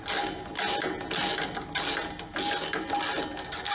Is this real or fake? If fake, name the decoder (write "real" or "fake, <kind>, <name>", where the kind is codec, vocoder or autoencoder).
real